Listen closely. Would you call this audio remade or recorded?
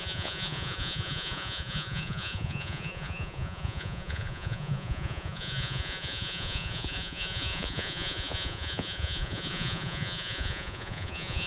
remade